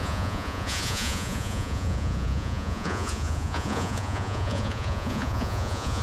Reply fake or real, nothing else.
fake